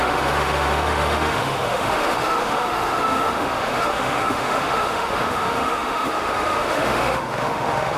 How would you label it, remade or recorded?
remade